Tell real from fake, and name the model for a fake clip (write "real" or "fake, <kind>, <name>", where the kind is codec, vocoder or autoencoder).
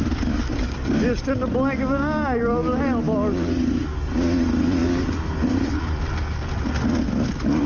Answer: real